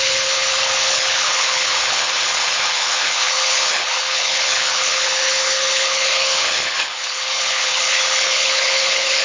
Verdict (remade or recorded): remade